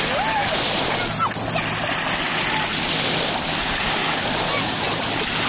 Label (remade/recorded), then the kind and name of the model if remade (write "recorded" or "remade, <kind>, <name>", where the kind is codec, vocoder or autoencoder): recorded